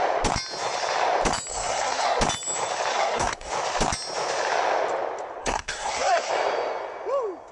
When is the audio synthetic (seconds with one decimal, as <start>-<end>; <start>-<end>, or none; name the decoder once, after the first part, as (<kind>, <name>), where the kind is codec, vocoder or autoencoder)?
1.5-2.2 (codec, SNAC); 2.9-3.5; 5.4-6.3